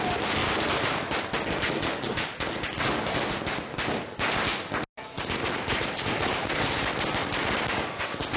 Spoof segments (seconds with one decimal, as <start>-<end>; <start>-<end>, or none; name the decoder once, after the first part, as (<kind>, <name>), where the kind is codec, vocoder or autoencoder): 0.4-1.1 (vocoder, BigVGAN v2)